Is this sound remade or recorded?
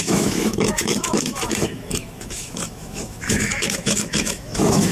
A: remade